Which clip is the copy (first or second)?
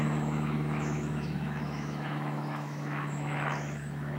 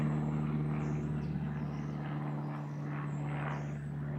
first